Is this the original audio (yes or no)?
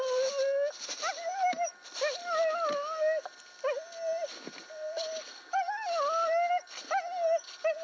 yes